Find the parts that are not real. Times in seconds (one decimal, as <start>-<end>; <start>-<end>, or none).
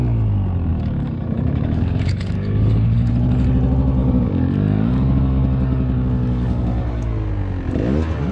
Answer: 0.7-3.1; 4.0-7.1